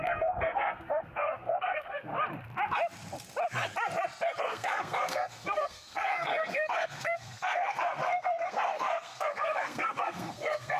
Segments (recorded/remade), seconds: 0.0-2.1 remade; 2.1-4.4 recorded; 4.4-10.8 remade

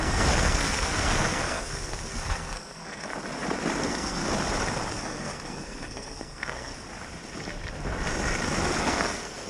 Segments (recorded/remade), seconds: 0.0-3.1 remade; 3.1-3.8 recorded; 3.8-4.2 remade; 4.2-4.9 recorded; 4.9-6.7 remade; 6.7-8.8 recorded; 8.8-9.5 remade

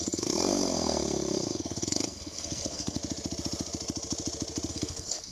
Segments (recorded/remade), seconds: 0.0-3.0 remade; 3.0-4.7 recorded; 4.7-5.3 remade

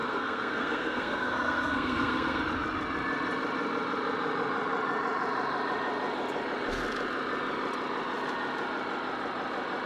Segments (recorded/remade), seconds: 0.0-2.4 remade; 2.4-9.9 recorded

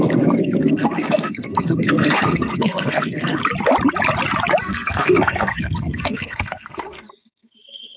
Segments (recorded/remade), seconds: 0.0-3.4 remade; 3.4-4.6 recorded; 4.6-8.0 remade